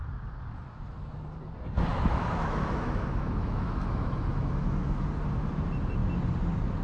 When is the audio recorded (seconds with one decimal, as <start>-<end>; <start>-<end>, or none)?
0.0-1.9; 5.1-6.8

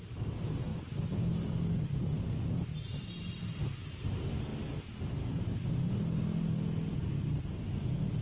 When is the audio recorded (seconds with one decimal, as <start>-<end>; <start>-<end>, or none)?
0.0-8.2

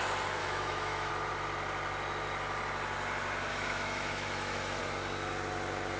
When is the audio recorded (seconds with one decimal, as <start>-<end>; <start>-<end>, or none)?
0.0-0.4; 1.1-3.5; 4.8-6.0

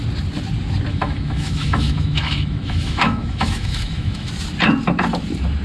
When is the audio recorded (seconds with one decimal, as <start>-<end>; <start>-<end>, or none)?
0.0-0.9; 4.3-5.6

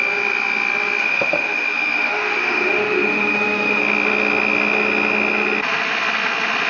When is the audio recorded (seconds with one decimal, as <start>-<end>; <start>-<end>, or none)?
0.0-1.0; 3.8-6.7

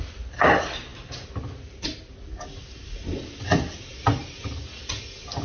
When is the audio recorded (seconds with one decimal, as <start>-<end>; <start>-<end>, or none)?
0.0-5.4

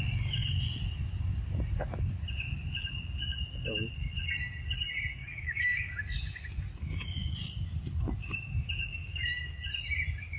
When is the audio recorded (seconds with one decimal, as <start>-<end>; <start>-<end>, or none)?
0.0-5.2; 5.9-8.9; 9.6-10.4

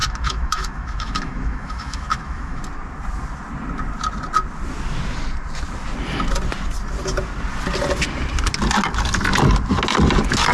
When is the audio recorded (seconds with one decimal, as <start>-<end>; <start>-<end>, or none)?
2.6-10.5